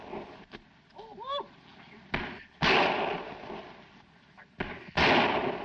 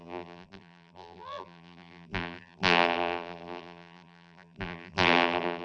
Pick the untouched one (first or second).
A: first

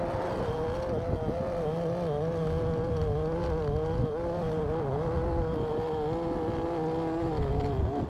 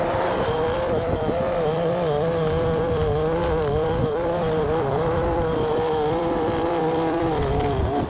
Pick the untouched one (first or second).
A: first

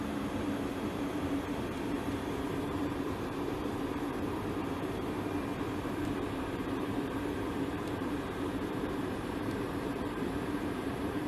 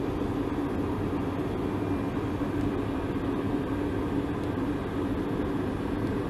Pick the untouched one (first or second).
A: second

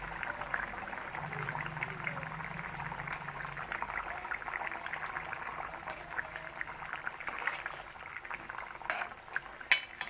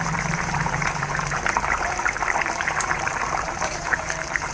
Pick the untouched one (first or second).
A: first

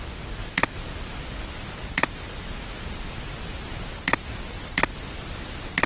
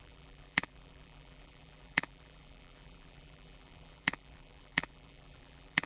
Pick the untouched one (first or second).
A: first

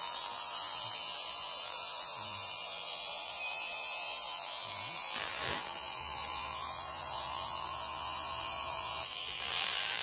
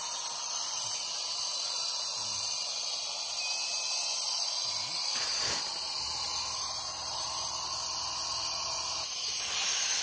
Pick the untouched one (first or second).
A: second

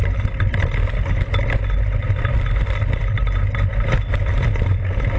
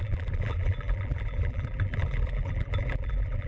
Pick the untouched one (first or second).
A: first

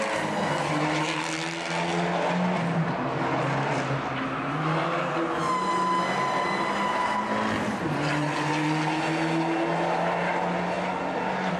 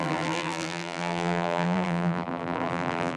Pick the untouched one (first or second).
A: first